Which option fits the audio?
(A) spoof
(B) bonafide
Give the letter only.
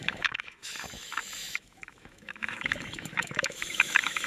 A